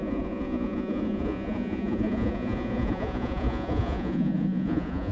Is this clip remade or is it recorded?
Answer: remade